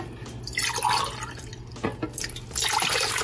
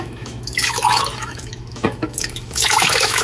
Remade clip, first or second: second